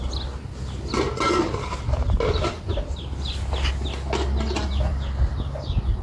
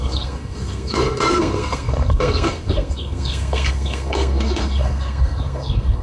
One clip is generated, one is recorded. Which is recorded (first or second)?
first